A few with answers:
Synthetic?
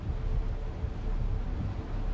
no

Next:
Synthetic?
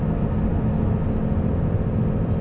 no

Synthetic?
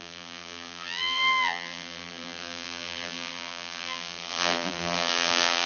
yes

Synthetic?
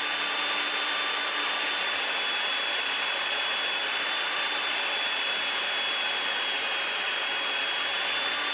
no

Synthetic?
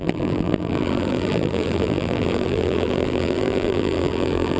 yes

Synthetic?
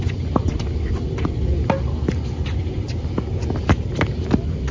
no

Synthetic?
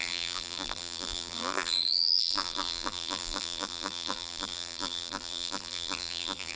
yes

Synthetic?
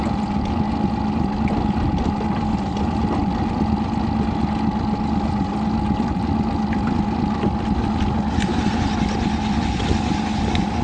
no